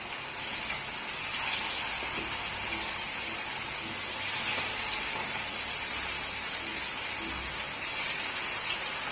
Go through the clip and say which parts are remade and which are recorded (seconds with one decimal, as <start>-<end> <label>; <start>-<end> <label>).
0.0-9.1 recorded